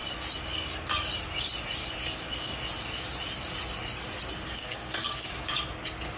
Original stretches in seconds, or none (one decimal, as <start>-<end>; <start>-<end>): 0.0-4.6; 5.3-6.2